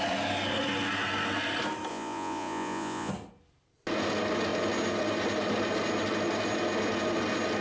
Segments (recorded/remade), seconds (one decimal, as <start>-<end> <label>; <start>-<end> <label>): 0.0-1.9 recorded; 1.9-3.1 remade; 3.1-7.6 recorded